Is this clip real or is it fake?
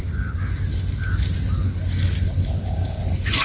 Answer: real